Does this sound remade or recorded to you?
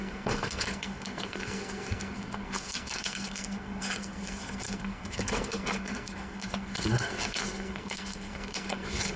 remade